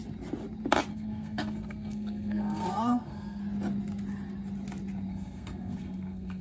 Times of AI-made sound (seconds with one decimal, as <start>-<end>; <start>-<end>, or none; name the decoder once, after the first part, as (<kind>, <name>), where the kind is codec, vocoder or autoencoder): 0.9-3.4 (codec, SNAC); 5.1-6.4